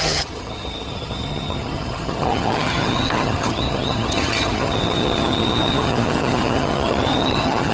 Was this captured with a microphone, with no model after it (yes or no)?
no